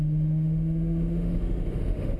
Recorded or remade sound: remade